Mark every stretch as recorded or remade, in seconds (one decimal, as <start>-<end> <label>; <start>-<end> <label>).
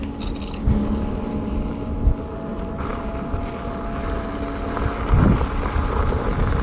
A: 0.0-6.6 recorded